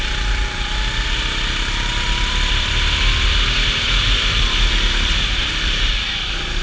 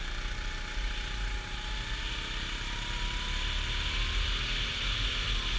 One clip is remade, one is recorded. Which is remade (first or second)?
first